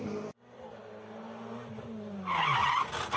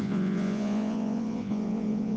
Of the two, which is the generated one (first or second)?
second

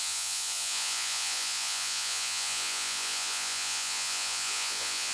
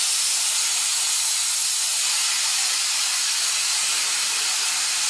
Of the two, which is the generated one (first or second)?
first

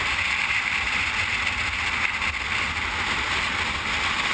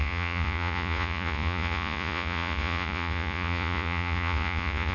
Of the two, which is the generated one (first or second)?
second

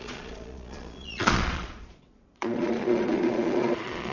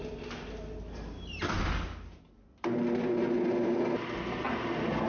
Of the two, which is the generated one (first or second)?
first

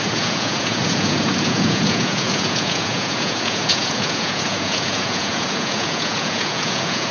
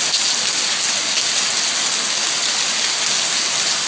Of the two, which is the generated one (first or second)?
first